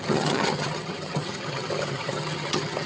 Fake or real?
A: fake